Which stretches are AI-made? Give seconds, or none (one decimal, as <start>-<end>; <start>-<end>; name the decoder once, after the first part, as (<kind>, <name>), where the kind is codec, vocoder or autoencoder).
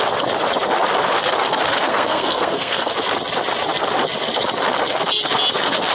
1.9-2.9 (codec, SNAC)